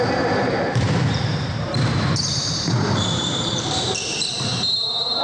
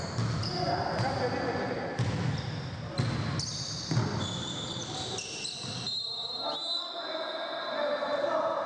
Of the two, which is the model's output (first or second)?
first